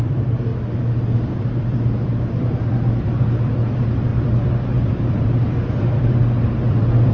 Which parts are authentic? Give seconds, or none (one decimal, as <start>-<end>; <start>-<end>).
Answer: 0.5-1.2